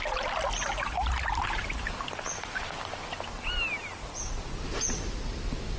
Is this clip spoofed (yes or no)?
no